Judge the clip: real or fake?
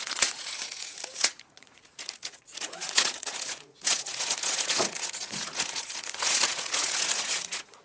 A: fake